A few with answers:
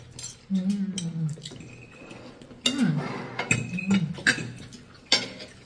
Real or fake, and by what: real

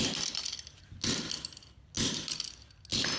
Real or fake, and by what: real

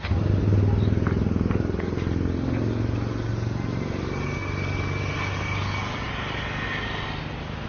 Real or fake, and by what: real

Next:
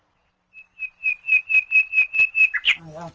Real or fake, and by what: real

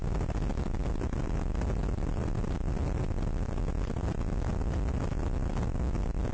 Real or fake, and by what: real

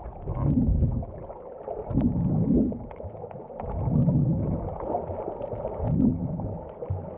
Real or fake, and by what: real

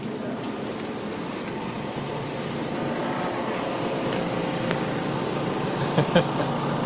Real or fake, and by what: real